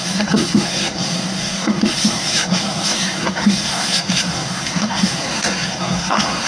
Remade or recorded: remade